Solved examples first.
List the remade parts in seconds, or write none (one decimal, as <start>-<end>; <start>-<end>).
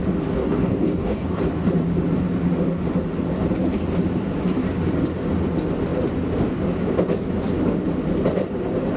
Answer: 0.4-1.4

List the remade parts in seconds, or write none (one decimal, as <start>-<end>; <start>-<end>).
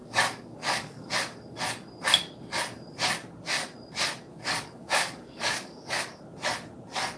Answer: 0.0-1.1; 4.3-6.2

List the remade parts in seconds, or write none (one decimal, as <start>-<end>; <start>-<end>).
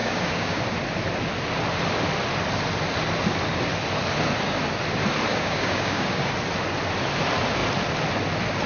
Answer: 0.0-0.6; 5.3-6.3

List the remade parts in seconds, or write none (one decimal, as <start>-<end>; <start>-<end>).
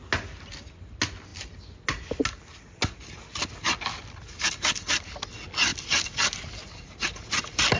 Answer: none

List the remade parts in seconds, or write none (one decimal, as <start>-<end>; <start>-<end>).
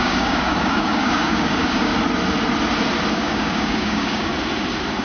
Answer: 0.0-1.9; 3.1-4.3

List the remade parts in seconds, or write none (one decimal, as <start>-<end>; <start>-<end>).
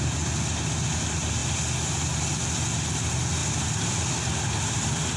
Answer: none